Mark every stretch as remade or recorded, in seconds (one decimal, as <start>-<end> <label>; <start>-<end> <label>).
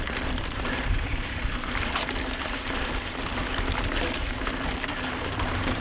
0.0-2.0 remade; 2.0-4.9 recorded; 4.9-5.8 remade